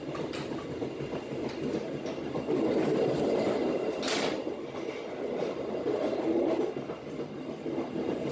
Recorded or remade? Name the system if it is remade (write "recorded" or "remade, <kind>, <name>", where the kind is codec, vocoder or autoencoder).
recorded